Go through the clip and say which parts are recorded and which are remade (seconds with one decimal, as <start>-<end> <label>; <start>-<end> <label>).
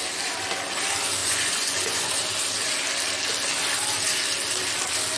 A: 0.0-1.2 recorded; 1.2-2.1 remade; 2.1-5.2 recorded